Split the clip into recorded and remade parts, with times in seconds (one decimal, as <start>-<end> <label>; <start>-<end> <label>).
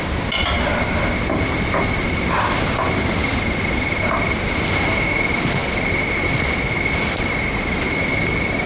0.0-8.7 recorded